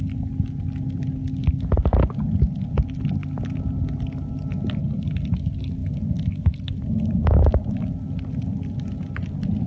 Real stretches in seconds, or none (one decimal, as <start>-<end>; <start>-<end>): 0.0-9.7